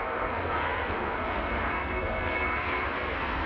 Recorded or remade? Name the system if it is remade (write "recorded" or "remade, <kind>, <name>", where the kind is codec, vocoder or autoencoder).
remade, codec, SNAC